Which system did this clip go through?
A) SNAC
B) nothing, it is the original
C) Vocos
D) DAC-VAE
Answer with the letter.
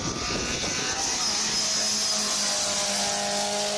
B